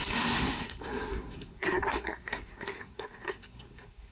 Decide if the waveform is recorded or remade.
remade